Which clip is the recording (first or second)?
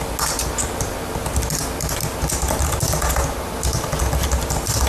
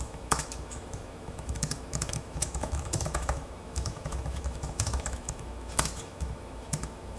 first